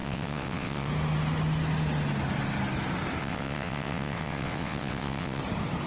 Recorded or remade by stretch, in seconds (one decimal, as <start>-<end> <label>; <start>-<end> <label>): 0.0-0.9 remade; 0.9-3.2 recorded; 3.2-5.4 remade; 5.4-5.9 recorded